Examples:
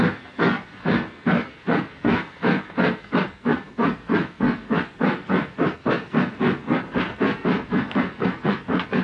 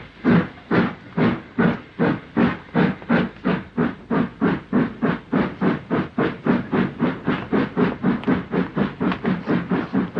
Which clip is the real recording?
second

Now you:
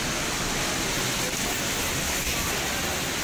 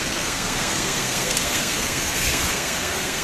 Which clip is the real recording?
first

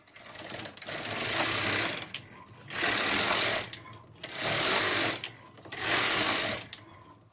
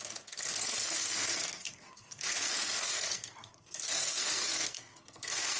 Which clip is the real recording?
first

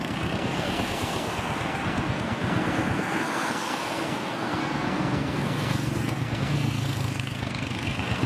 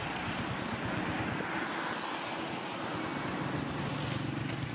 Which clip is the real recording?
second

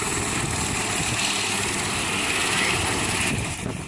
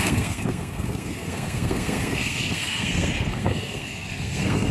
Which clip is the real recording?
first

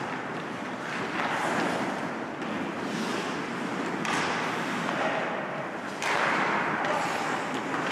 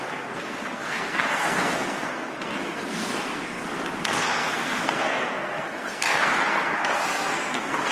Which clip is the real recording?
first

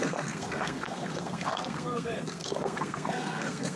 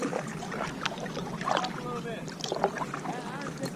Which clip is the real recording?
second